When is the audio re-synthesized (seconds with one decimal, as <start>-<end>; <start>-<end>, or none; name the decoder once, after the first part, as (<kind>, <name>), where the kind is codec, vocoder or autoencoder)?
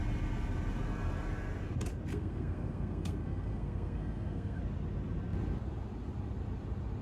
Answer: 2.1-4.6 (codec, SNAC)